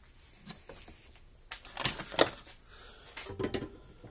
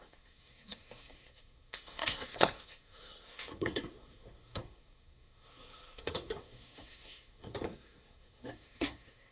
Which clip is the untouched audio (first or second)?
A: first